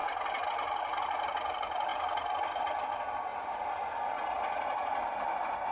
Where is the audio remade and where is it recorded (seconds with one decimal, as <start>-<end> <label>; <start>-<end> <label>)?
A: 0.0-0.5 remade; 0.5-3.3 recorded; 3.3-3.8 remade; 3.8-5.7 recorded